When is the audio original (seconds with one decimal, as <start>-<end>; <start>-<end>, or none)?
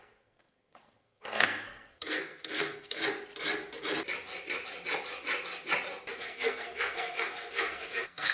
3.0-6.1